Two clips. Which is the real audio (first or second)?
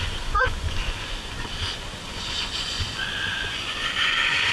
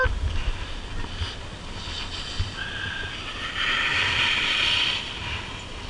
second